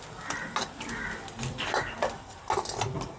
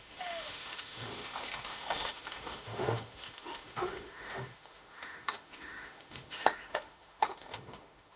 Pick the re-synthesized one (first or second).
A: second